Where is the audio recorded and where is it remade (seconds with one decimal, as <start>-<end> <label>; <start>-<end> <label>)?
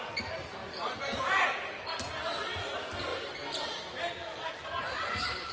0.0-5.5 recorded